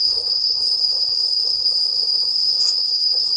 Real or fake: fake